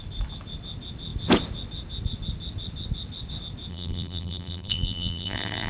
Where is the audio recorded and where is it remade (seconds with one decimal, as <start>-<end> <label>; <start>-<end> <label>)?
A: 0.0-3.7 recorded; 3.7-5.7 remade